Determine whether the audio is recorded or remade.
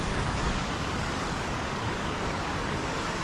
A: remade